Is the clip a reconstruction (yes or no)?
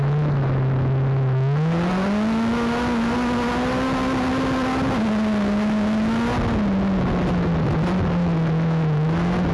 no